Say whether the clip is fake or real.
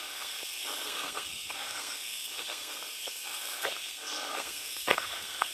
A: fake